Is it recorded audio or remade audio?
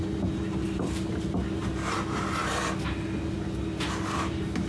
recorded